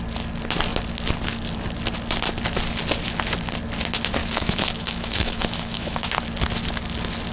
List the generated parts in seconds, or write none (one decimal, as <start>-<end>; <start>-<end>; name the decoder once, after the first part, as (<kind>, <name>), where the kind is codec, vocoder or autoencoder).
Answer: 4.2-6.1 (autoencoder, DAC-VAE)